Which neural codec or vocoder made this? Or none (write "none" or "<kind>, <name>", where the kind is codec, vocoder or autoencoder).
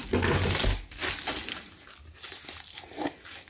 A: none